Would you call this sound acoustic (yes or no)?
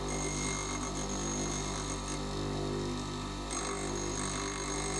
yes